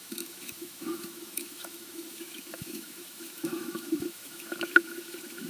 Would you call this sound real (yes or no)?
no